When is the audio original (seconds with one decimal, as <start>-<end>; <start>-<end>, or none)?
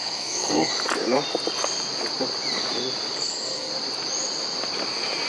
0.7-3.2; 3.7-5.3